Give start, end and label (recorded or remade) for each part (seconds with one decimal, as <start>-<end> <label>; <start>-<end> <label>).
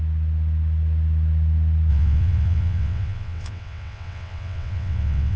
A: 0.0-1.9 recorded; 1.9-5.4 remade